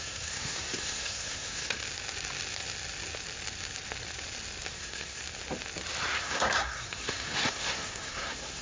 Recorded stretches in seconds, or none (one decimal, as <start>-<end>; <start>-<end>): 1.8-4.7; 5.2-6.2